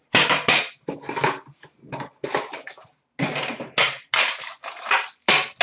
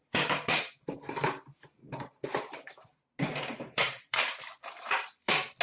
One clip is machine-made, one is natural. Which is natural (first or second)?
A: first